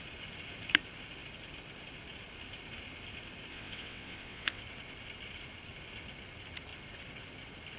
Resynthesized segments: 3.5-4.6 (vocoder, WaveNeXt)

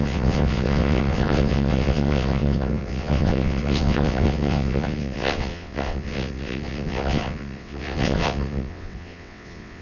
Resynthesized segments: 0.0-9.8 (vocoder, WaveNeXt)

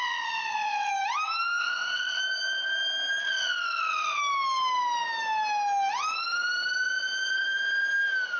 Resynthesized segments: 0.0-0.9 (vocoder, WaveNeXt); 1.6-2.2; 3.2-4.2

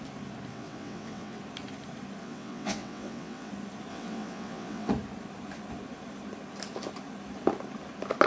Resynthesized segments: 0.5-1.4 (vocoder, WaveNeXt); 2.2-3.5; 3.9-4.9

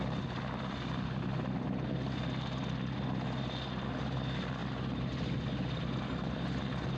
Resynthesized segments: none

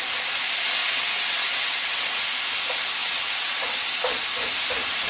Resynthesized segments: 0.8-2.0 (vocoder, WaveNeXt); 3.0-3.9

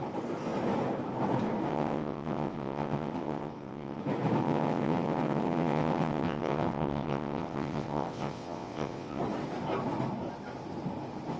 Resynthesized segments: 1.7-4.0 (vocoder, WaveNeXt); 4.4-9.2

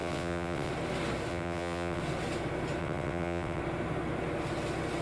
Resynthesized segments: 0.0-0.7 (vocoder, WaveNeXt); 1.3-2.0; 2.8-3.6